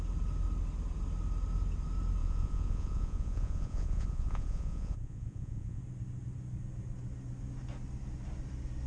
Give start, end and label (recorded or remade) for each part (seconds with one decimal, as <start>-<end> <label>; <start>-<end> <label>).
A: 0.0-2.2 recorded; 2.2-5.8 remade; 5.8-8.9 recorded